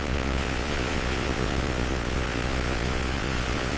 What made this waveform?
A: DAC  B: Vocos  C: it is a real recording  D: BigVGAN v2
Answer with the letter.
B